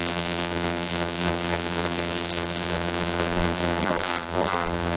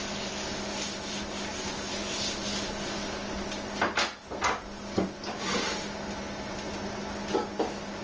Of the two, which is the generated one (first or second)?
first